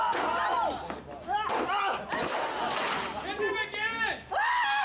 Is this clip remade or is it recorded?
recorded